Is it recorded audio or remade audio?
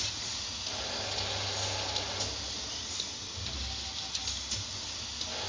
recorded